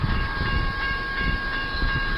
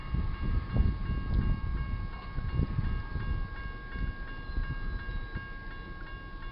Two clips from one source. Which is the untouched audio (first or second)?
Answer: second